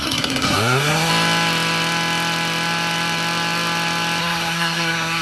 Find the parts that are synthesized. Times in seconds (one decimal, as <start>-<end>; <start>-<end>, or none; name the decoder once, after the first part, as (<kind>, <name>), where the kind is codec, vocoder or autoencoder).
0.0-1.1 (codec, SNAC); 4.2-5.2